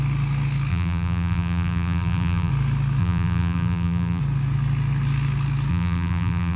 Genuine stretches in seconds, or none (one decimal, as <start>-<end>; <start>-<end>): 0.0-0.7; 2.5-3.0; 4.2-5.7